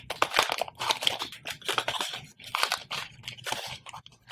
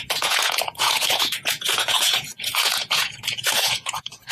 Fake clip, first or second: second